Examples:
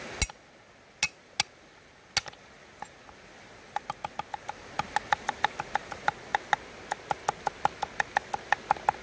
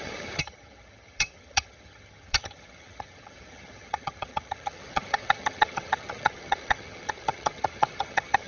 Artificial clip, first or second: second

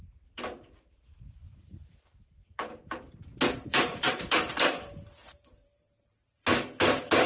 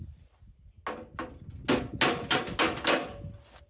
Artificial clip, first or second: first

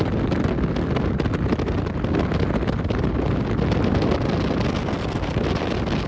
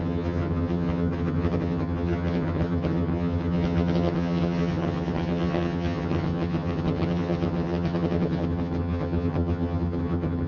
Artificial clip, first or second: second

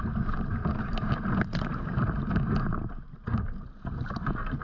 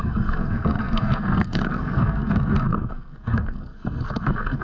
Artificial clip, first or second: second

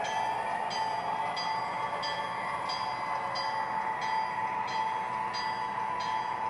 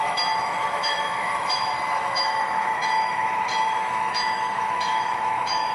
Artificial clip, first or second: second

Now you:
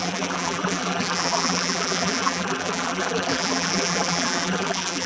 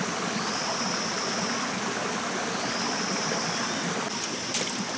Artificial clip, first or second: first